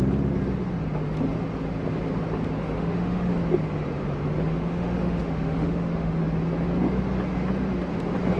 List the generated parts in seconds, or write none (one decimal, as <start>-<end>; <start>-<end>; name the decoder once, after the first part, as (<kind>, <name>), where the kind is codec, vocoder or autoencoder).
2.6-3.3 (autoencoder, DAC-VAE); 4.5-6.2